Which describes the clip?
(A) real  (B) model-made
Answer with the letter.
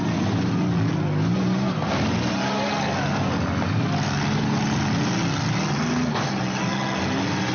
A